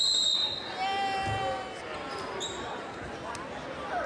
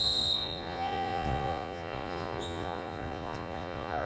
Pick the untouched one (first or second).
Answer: first